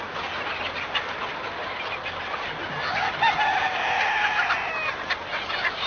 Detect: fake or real real